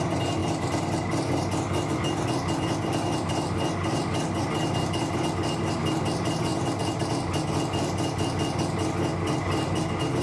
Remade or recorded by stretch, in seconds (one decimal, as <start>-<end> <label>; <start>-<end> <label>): 0.0-10.2 recorded